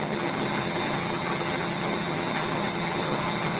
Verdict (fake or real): fake